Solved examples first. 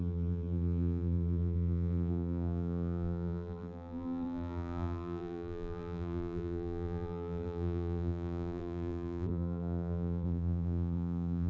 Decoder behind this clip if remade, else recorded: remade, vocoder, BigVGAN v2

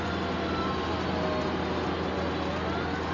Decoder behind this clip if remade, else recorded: recorded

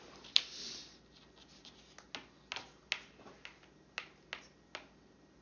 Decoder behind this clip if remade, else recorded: recorded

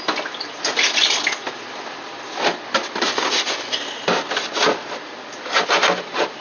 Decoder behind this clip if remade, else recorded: recorded